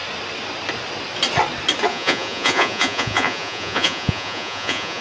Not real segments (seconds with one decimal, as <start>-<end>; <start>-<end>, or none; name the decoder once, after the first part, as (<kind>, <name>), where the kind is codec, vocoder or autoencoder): 1.9-5.0 (vocoder, Vocos)